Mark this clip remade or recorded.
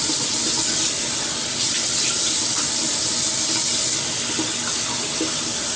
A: recorded